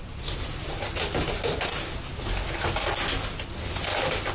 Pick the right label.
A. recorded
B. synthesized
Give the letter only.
A